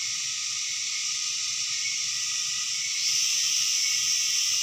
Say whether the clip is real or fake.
real